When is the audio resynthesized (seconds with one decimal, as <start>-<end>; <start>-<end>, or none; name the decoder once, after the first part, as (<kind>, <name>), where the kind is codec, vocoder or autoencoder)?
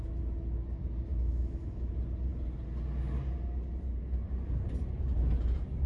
1.1-1.9 (autoencoder, DAC-VAE)